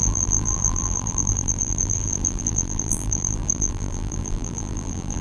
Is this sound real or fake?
fake